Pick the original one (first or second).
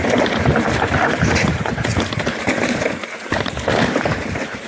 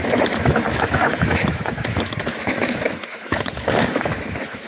first